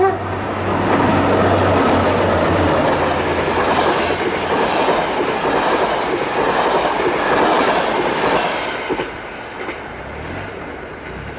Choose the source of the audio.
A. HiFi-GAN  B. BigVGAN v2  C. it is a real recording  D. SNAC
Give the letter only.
C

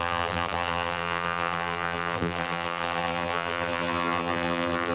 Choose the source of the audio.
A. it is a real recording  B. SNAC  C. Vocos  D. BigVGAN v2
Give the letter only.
D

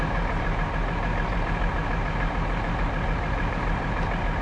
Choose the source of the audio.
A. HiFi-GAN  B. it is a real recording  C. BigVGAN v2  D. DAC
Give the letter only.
C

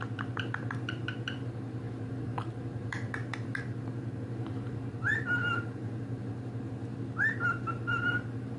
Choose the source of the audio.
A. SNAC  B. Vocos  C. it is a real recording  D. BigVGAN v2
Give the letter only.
D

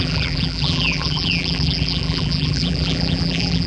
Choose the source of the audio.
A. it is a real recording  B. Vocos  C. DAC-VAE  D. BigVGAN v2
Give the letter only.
D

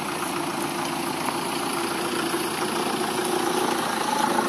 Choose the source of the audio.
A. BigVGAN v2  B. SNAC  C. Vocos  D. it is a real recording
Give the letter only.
D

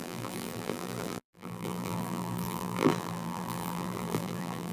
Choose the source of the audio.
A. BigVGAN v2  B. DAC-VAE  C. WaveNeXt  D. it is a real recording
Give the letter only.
A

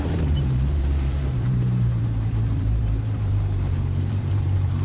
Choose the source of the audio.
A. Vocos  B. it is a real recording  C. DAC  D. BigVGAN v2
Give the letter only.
D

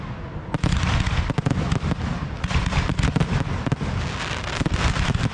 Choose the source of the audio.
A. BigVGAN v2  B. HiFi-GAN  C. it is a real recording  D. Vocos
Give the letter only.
C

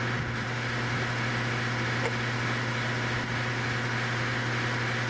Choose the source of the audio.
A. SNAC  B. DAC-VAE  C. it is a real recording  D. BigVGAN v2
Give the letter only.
C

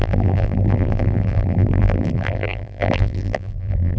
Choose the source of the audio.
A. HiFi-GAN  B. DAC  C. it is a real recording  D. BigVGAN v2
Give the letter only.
D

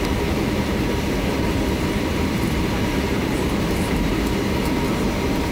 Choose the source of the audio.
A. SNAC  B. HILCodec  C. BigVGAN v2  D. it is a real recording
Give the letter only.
C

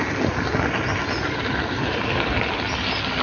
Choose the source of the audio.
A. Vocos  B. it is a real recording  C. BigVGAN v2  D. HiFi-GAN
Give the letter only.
B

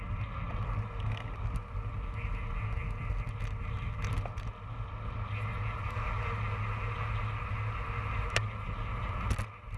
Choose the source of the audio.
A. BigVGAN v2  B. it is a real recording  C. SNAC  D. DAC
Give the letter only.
B